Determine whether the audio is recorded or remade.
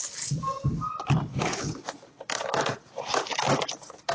recorded